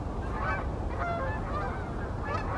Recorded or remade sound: recorded